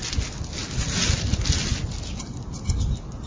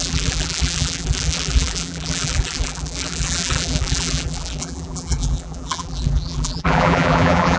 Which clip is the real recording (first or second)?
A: first